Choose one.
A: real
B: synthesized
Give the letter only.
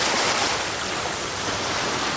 A